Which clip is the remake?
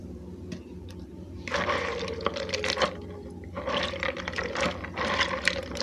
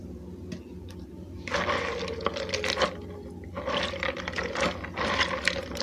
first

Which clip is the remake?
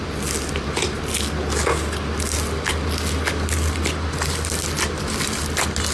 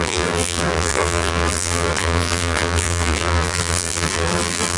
second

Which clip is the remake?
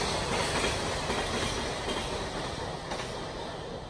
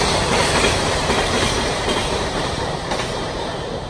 second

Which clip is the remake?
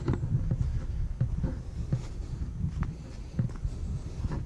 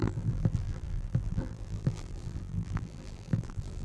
second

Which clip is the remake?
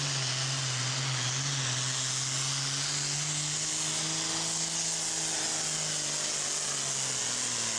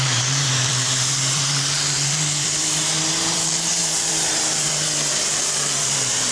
second